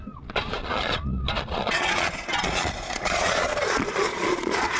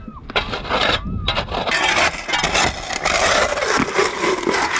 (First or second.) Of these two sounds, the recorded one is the second